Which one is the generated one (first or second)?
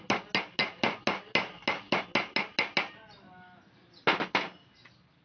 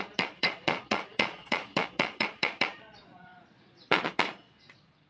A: second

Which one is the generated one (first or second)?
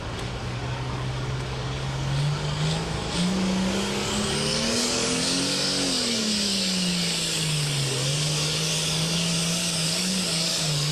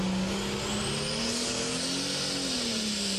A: first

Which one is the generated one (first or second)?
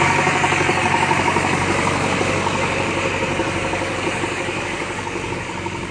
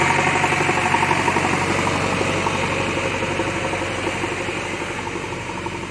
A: first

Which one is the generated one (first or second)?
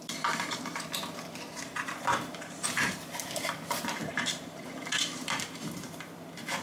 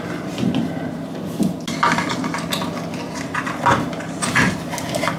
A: first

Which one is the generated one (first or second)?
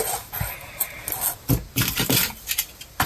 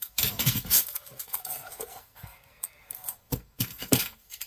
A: second